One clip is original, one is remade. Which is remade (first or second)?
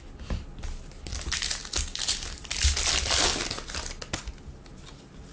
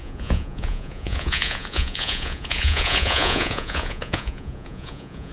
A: second